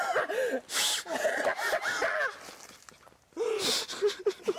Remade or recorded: recorded